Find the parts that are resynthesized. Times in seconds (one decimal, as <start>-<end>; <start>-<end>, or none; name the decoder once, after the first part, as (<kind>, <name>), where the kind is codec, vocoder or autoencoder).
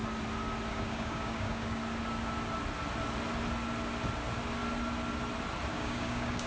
0.7-1.8 (codec, DAC); 5.7-6.5